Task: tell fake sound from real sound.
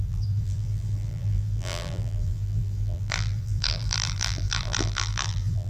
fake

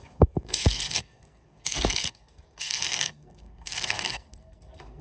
fake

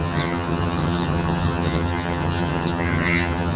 fake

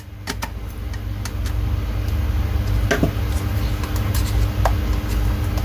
real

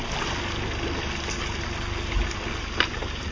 real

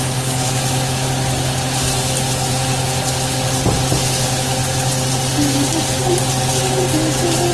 real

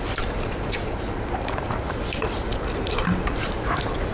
fake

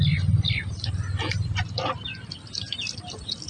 real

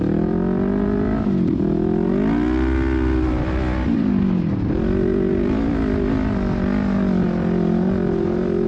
real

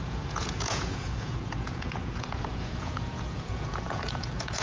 fake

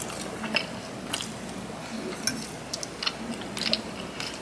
real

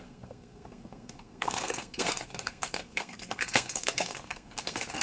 fake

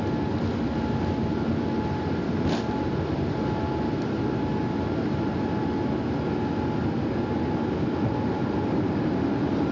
real